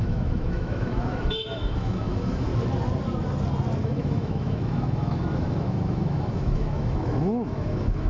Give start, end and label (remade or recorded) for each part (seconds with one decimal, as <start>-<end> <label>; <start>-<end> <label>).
0.0-2.5 remade; 2.5-3.8 recorded; 3.8-8.1 remade